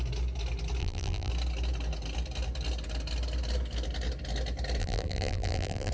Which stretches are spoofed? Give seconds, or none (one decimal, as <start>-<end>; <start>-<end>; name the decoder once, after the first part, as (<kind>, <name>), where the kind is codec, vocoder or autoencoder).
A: 0.8-1.3 (vocoder, BigVGAN v2); 4.8-5.9